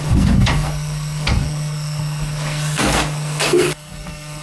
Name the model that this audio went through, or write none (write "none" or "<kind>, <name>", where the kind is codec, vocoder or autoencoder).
codec, SNAC